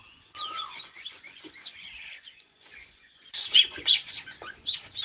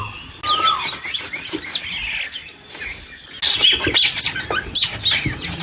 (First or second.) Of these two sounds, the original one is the second